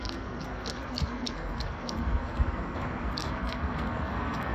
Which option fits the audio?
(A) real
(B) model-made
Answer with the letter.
B